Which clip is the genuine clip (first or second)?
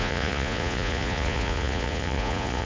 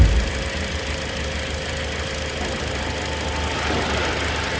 second